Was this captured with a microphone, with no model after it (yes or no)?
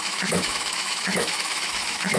no